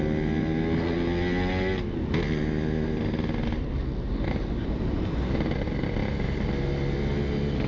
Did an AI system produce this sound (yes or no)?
no